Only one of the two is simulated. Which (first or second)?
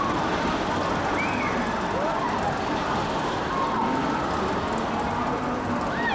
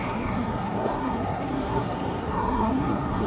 second